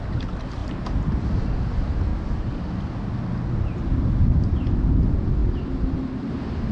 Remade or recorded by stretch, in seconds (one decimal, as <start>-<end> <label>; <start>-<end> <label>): 0.0-2.1 recorded; 2.1-2.7 remade; 2.7-5.4 recorded; 5.4-6.3 remade; 6.3-6.7 recorded